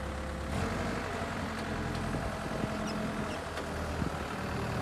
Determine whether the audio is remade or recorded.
recorded